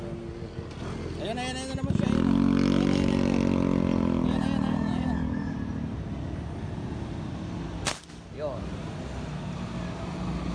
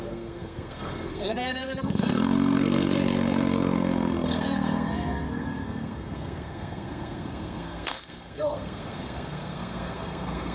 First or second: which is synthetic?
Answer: second